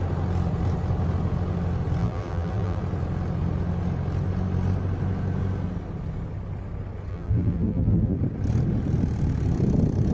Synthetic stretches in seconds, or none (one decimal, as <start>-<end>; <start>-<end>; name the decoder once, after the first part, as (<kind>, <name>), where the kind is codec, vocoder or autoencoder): 2.0-2.8 (vocoder, BigVGAN v2); 7.1-8.2